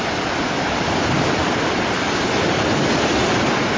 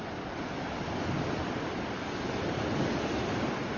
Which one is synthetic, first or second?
first